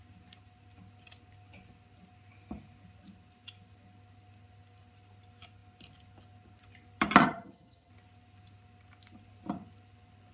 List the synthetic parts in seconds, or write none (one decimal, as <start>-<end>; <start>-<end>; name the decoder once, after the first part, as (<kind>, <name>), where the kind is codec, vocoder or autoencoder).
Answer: 7.2-7.9 (vocoder, HiFi-GAN)